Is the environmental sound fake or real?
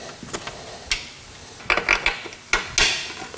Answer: real